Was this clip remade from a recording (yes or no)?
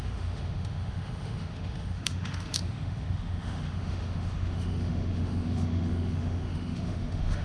yes